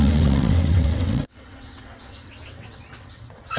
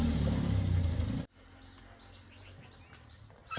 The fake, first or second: first